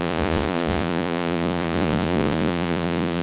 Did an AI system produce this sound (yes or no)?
yes